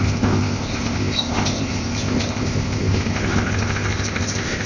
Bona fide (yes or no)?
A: no